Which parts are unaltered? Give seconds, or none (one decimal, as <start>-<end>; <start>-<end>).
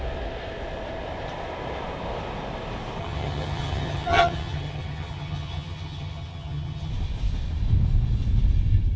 0.0-3.0; 6.9-9.0